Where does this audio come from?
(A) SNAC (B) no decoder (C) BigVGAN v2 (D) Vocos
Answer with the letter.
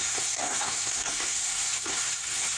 A